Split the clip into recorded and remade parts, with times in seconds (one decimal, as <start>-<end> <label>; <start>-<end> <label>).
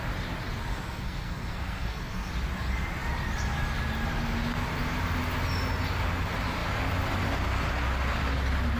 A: 0.0-0.7 recorded; 0.7-2.3 remade; 2.3-8.8 recorded